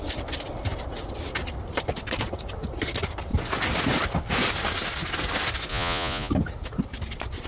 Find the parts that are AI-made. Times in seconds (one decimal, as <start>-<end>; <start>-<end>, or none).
5.7-6.3